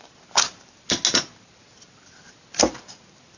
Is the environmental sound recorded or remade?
recorded